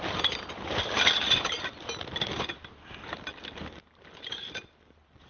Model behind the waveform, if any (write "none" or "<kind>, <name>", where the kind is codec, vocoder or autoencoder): none